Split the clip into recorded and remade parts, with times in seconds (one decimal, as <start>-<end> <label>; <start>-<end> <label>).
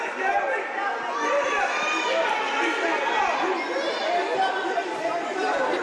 0.0-5.8 recorded